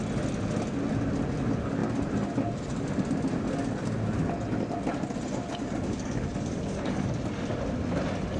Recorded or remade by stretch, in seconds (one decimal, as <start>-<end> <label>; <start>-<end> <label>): 0.0-5.4 recorded; 5.4-7.1 remade; 7.1-8.4 recorded